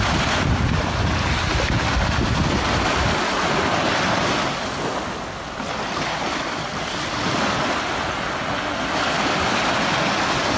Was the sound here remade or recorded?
recorded